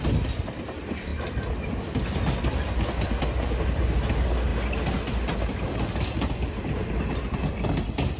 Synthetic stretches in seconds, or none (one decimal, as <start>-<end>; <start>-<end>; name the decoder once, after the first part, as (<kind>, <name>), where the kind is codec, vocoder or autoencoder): none